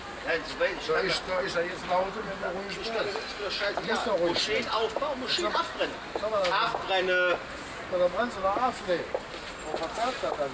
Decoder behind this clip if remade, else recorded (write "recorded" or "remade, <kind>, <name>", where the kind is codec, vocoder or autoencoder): recorded